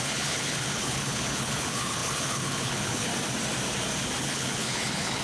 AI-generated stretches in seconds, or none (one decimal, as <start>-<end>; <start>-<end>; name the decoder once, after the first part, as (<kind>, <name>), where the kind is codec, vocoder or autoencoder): 0.0-3.1 (codec, HILCodec); 4.2-5.2